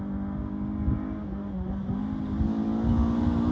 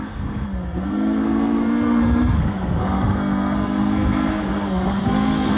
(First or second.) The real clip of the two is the first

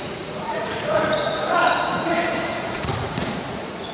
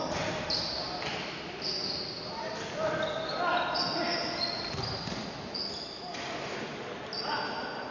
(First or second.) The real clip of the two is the second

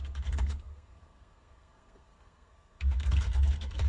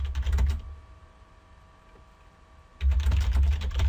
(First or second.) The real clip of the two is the second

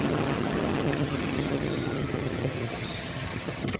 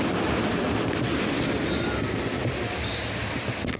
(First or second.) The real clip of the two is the second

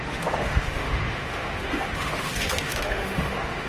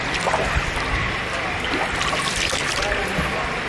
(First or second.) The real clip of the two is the second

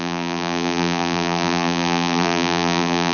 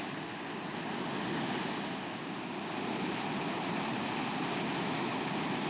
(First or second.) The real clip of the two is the second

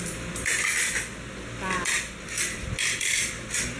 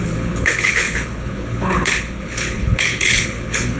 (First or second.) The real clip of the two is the first